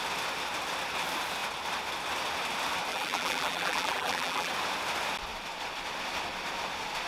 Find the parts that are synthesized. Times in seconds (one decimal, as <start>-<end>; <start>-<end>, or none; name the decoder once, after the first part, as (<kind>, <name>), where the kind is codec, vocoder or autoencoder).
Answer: 2.9-4.5 (vocoder, BigVGAN v2)